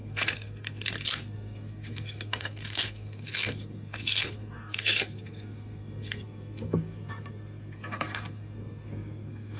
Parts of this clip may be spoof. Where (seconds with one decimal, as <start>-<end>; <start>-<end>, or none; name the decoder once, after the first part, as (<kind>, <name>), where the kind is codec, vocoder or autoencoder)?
0.0-9.6 (codec, SNAC)